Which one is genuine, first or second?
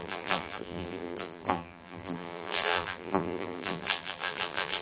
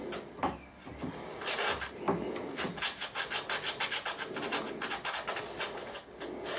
second